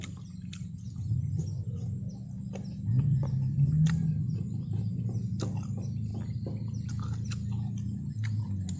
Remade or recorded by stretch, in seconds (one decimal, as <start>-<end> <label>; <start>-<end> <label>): 0.0-8.8 recorded